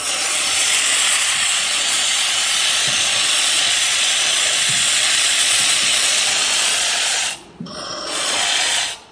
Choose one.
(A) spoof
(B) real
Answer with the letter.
A